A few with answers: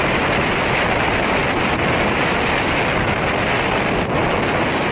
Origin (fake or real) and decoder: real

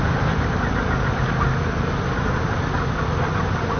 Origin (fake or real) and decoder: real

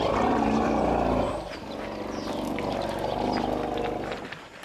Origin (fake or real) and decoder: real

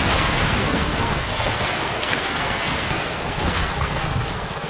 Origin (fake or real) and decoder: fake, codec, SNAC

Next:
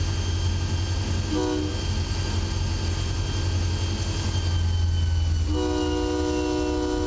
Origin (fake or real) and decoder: real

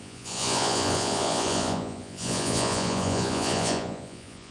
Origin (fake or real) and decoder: fake, vocoder, Vocos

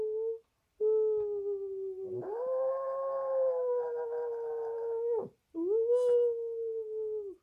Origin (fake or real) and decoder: real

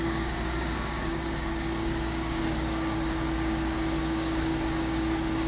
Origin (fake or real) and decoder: fake, codec, DAC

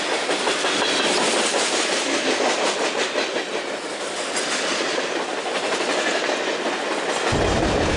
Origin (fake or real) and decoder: real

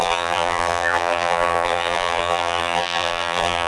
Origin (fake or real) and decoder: fake, vocoder, BigVGAN v2